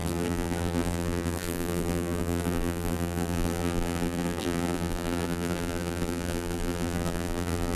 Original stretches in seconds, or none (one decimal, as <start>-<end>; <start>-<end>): none